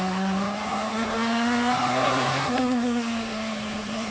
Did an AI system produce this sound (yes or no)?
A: yes